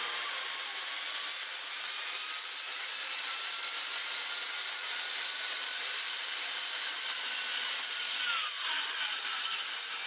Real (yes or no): yes